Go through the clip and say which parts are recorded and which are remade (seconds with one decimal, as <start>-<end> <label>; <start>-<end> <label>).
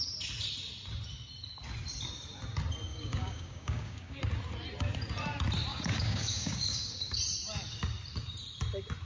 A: 0.0-2.9 recorded; 2.9-4.2 remade; 4.2-5.7 recorded; 5.7-7.0 remade; 7.0-9.0 recorded